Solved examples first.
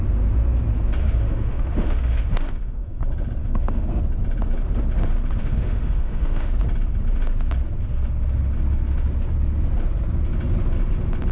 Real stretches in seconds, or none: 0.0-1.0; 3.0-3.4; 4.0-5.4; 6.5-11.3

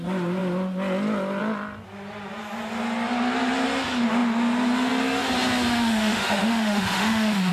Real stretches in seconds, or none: 0.0-5.7

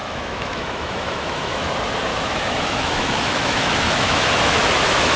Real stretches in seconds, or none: 1.7-2.1

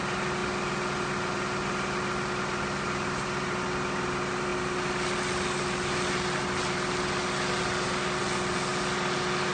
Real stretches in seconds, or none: 0.0-9.5

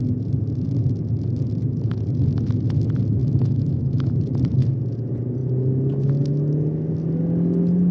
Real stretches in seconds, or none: 0.0-3.2; 4.1-7.9

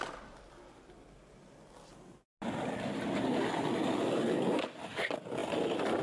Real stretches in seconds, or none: 0.0-6.0

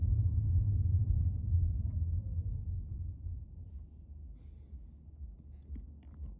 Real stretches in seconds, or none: 0.0-6.4